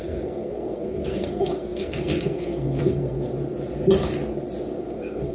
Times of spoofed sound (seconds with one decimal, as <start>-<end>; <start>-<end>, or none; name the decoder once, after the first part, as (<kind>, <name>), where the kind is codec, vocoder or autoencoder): 0.0-3.3 (codec, SNAC); 4.8-5.3